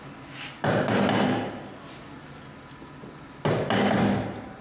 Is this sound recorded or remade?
recorded